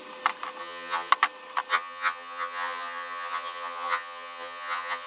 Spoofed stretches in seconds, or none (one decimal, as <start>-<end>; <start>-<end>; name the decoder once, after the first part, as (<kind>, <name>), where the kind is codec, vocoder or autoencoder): 0.6-1.1 (vocoder, HiFi-GAN); 1.7-5.1